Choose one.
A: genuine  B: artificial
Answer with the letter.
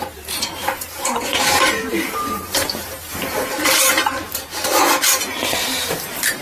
B